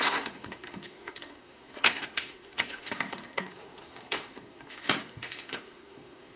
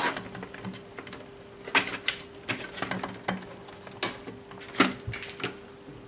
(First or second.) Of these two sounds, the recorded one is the second